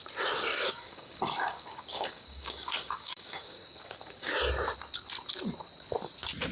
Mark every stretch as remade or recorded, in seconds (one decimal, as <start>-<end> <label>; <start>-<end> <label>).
0.0-0.5 recorded; 0.5-4.4 remade; 4.4-6.5 recorded